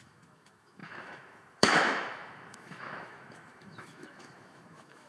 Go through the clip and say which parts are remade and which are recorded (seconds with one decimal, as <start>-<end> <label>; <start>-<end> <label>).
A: 0.0-5.1 remade